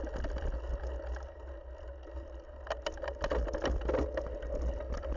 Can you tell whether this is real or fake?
real